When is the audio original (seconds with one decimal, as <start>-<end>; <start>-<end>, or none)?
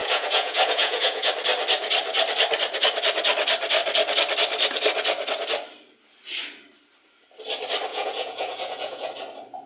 1.3-7.9; 9.1-9.7